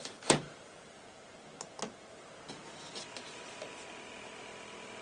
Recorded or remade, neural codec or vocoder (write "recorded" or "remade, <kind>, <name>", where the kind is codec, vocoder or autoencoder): recorded